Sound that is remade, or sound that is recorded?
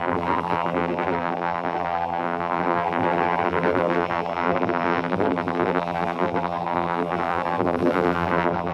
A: remade